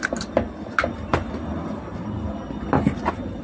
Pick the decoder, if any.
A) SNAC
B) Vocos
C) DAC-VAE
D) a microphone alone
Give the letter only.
D